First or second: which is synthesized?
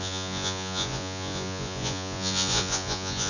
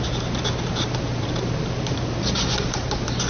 first